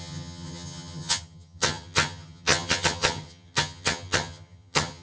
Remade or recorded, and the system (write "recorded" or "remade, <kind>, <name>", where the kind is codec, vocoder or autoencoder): remade, vocoder, HiFi-GAN